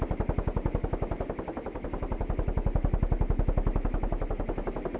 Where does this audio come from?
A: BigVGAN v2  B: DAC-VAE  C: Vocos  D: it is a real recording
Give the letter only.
D